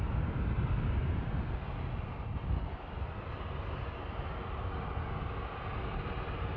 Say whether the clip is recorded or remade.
recorded